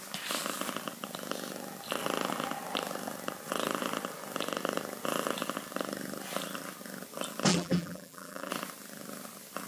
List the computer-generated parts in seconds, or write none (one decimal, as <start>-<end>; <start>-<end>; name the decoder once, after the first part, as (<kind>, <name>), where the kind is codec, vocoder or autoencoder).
7.5-8.5 (vocoder, BigVGAN v2)

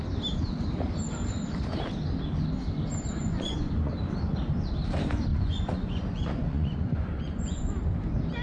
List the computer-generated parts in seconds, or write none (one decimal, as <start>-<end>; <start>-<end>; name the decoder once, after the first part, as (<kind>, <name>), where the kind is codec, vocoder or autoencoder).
3.2-3.9 (vocoder, Vocos); 5.3-7.7

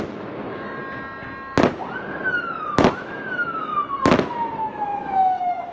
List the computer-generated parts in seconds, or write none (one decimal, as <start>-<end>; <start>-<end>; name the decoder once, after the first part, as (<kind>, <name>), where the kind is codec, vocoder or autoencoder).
0.0-0.8 (autoencoder, DAC-VAE); 2.9-3.7; 4.3-5.7

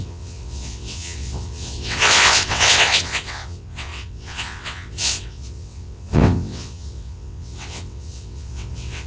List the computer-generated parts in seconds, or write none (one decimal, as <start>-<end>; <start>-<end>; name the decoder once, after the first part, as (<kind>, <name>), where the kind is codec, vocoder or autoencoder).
0.0-9.1 (vocoder, WaveNeXt)

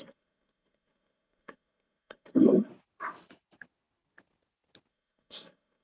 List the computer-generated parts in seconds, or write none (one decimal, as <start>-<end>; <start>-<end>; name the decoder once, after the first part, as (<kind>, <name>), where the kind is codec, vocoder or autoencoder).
0.0-2.7 (codec, SNAC); 4.9-5.8

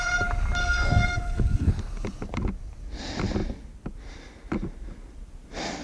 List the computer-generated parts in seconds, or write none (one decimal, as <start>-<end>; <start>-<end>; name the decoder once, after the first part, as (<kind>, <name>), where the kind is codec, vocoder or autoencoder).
0.6-1.7 (codec, SNAC)

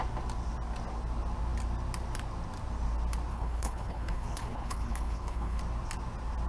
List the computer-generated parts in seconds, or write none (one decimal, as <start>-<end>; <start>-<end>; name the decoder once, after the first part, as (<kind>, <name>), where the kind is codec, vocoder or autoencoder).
3.3-5.6 (codec, HILCodec)